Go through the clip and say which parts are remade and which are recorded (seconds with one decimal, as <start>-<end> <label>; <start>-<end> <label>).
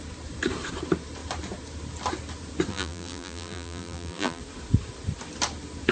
0.0-2.7 recorded; 2.7-4.4 remade; 4.4-5.9 recorded